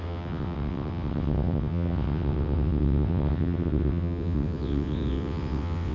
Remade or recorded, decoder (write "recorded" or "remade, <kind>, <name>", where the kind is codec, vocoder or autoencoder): remade, vocoder, WaveNeXt